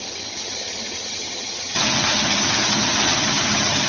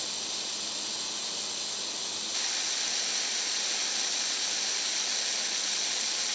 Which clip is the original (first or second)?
second